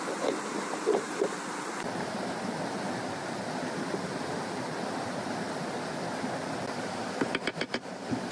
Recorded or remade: recorded